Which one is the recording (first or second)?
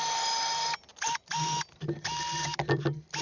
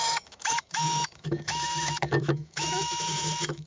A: first